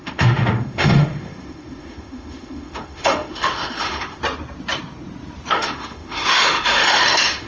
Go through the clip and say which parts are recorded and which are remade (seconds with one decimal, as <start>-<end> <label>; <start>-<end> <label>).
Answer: 0.0-4.2 remade; 4.2-5.5 recorded; 5.5-7.5 remade